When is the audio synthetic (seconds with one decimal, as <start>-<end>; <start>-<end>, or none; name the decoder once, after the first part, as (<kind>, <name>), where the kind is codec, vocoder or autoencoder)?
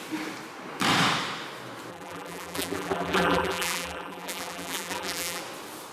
1.9-5.4 (vocoder, BigVGAN v2)